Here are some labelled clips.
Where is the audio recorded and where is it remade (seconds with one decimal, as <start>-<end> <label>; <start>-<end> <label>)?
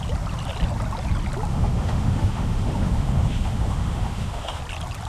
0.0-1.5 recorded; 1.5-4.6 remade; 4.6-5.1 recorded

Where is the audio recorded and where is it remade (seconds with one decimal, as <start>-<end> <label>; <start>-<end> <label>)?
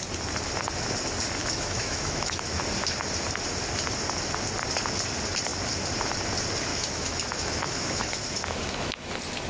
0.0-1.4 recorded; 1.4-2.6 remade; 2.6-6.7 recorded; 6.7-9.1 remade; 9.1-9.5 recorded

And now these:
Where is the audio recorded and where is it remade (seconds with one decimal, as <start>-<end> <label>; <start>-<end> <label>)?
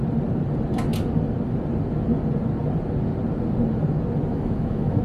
0.0-4.3 recorded; 4.3-5.0 remade